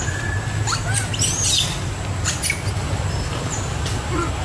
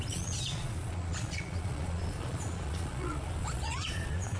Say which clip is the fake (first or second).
second